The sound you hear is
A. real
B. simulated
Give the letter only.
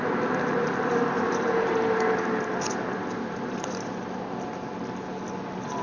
A